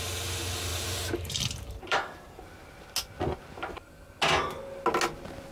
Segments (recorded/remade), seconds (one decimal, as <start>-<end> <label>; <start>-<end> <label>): 0.0-0.7 recorded; 0.7-2.6 remade; 2.6-5.5 recorded